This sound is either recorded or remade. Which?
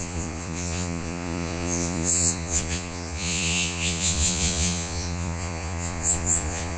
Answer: remade